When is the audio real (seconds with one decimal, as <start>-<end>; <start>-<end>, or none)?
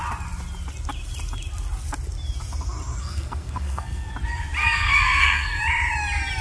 0.0-3.0; 4.1-4.6; 5.6-6.4